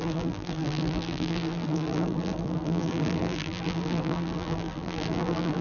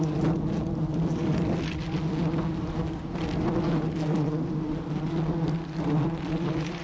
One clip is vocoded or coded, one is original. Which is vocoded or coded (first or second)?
first